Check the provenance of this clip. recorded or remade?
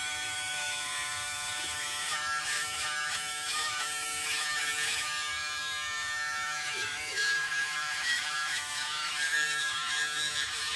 remade